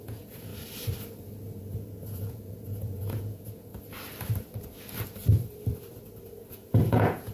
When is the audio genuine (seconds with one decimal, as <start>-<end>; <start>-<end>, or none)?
0.5-1.6; 3.7-6.5